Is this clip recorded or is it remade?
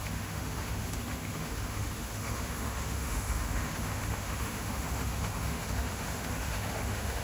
remade